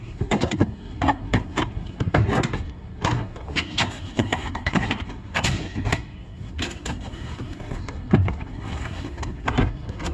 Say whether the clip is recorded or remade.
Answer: remade